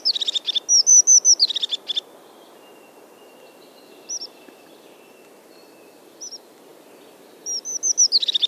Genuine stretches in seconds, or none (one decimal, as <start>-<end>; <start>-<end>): 0.0-8.5